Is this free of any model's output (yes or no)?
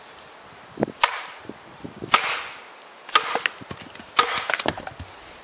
yes